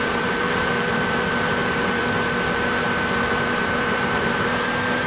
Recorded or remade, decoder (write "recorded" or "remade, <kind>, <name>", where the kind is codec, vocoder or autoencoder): remade, vocoder, BigVGAN v2